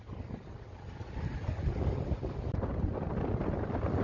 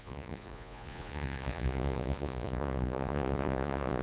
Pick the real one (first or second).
first